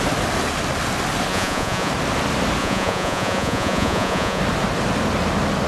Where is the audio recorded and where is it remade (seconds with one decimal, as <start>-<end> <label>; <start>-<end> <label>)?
0.0-1.3 recorded; 1.3-1.9 remade; 1.9-2.6 recorded; 2.6-4.4 remade; 4.4-5.7 recorded